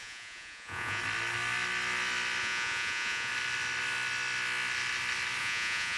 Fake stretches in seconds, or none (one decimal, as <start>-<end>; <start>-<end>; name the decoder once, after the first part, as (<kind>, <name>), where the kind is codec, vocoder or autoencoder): 0.0-1.0 (vocoder, Vocos); 2.4-3.3; 5.4-6.0